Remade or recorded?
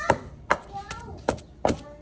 recorded